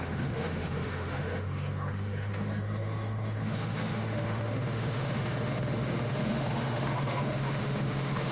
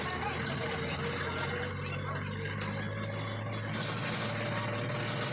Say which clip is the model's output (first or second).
first